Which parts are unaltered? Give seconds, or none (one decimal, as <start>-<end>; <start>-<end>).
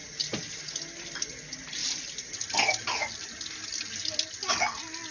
0.0-5.1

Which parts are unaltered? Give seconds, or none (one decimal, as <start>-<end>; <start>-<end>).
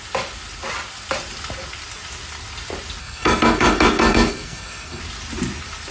0.0-3.0; 5.0-5.9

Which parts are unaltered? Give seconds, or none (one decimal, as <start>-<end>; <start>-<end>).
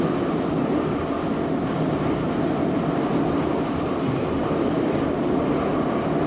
0.0-6.3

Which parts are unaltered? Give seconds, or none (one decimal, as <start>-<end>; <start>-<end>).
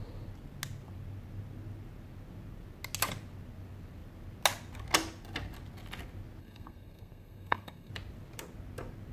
0.0-6.4; 7.9-9.1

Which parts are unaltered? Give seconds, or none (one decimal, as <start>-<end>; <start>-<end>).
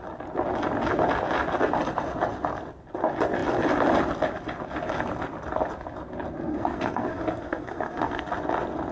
0.0-6.5; 8.3-8.9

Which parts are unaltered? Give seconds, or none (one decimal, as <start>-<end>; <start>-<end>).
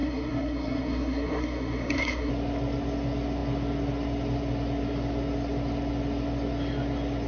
2.3-7.3